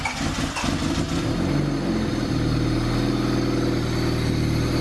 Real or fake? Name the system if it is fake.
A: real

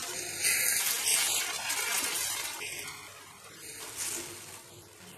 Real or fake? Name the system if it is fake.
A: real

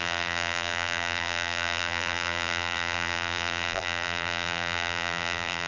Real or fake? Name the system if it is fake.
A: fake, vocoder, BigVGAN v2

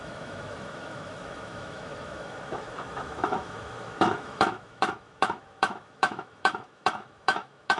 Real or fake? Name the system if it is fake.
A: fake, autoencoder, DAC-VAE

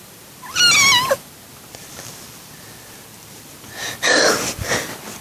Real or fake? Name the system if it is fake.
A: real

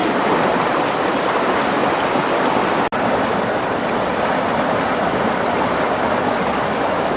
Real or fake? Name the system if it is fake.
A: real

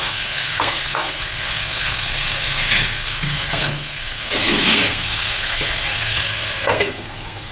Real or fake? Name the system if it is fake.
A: fake, codec, SNAC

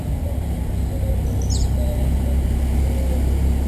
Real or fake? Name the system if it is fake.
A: real